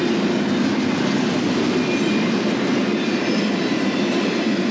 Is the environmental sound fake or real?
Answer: real